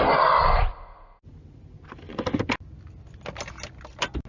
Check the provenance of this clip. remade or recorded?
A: recorded